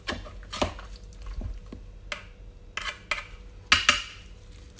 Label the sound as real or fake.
real